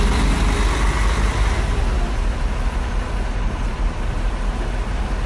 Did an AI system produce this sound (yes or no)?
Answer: no